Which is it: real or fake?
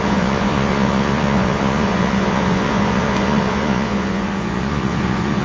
fake